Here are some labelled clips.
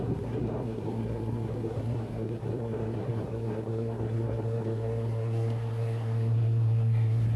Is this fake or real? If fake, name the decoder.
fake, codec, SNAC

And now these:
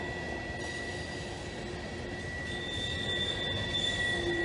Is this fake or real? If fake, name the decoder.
real